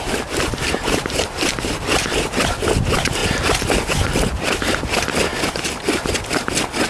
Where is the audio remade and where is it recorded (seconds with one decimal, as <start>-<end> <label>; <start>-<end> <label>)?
0.0-6.9 recorded